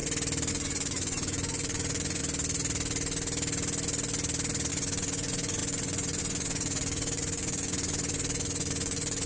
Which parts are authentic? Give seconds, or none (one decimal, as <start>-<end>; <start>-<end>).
0.0-0.5; 2.2-4.7